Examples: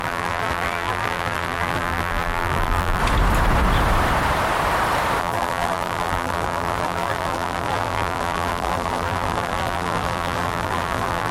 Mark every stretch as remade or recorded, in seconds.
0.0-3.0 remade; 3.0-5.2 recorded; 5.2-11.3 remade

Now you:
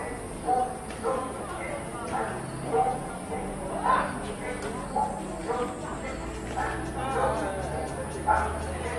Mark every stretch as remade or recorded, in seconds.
0.0-9.0 recorded

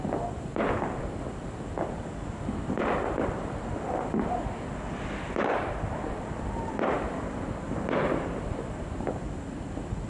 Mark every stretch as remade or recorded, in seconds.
0.0-0.5 recorded; 0.5-2.0 remade; 2.0-10.1 recorded